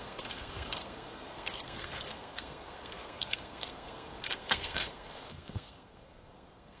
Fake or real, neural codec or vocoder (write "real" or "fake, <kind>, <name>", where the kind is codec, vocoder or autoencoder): fake, codec, SNAC